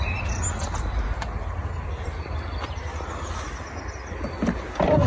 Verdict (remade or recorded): recorded